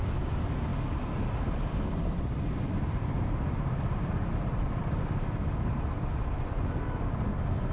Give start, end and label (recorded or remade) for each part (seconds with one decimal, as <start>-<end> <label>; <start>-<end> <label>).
0.0-5.4 recorded; 5.4-6.1 remade; 6.1-7.7 recorded